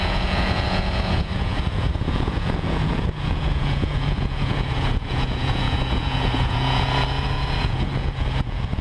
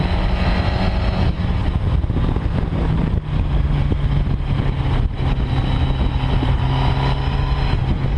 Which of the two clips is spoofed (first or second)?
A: first